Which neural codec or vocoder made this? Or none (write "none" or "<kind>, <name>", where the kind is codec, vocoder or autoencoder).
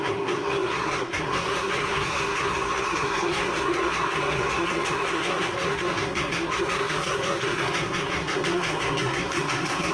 codec, SNAC